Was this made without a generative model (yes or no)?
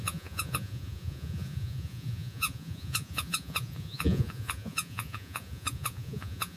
no